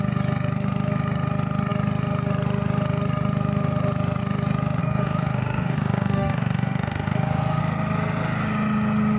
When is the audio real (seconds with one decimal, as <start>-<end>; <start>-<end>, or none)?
0.0-4.8; 7.6-9.2